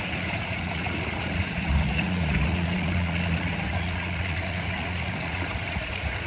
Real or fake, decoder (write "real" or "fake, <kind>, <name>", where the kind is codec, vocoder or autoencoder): fake, vocoder, Vocos